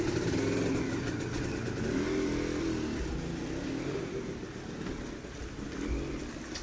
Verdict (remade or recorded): recorded